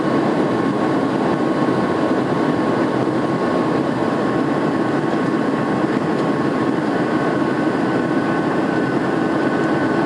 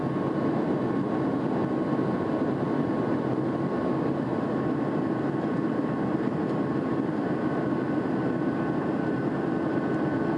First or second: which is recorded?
second